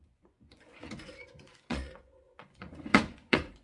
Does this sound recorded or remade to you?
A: remade